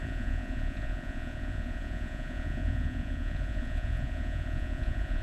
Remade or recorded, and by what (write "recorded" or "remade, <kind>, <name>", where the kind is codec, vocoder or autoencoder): remade, vocoder, Vocos